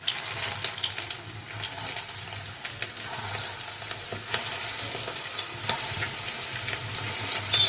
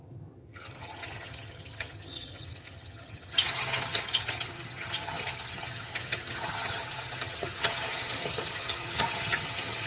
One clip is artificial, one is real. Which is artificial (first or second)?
second